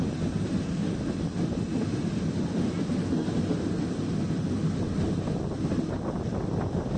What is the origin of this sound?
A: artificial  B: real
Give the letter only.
B